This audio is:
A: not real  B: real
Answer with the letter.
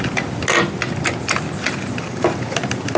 B